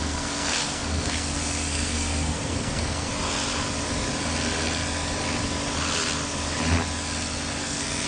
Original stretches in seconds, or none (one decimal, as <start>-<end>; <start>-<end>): 3.1-7.6